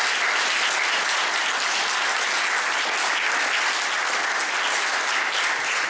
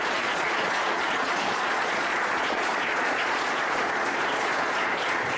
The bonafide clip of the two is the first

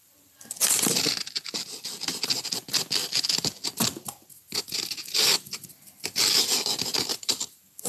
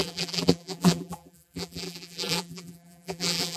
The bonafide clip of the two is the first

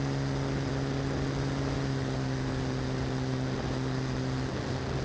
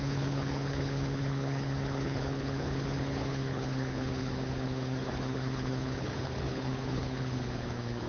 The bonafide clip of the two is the first